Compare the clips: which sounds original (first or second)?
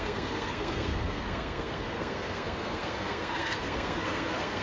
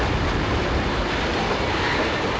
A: second